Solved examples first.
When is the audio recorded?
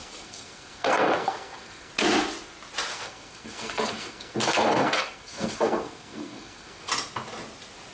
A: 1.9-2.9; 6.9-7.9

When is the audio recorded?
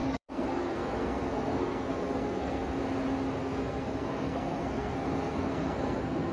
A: 2.8-3.4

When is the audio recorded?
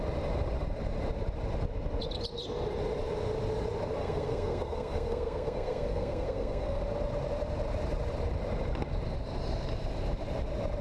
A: 0.0-4.0; 6.8-10.8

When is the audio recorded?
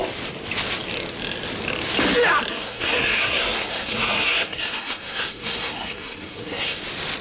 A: 0.0-2.5; 6.8-7.2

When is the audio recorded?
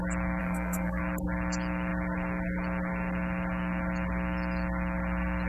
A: 0.0-0.4; 1.0-5.5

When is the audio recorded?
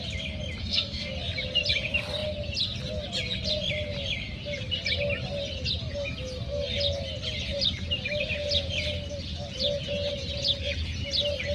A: 0.0-0.6; 1.1-11.5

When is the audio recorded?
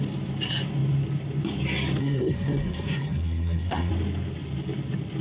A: 0.0-2.0; 3.9-5.2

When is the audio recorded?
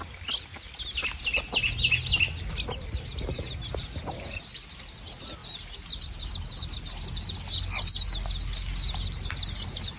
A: 0.0-10.0